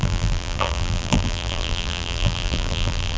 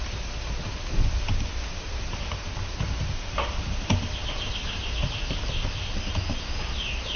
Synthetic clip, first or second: first